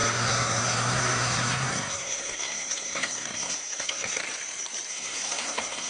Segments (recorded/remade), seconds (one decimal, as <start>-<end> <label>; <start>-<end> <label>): 0.0-4.2 remade; 4.2-4.9 recorded; 4.9-5.9 remade